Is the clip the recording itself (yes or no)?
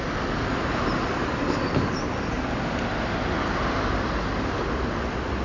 yes